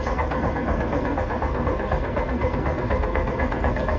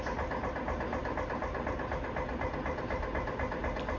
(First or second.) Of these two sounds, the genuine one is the second